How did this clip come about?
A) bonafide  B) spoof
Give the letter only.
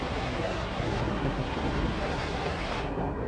B